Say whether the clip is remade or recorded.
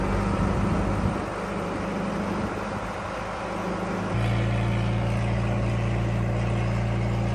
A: recorded